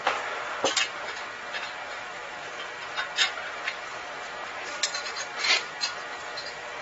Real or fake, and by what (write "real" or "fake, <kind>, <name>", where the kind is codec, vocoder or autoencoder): fake, vocoder, BigVGAN v2